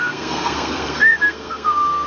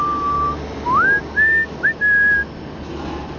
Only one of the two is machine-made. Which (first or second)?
first